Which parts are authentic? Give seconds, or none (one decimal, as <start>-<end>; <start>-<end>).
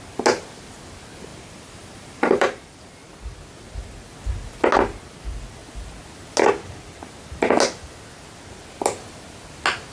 0.0-1.3; 2.9-9.9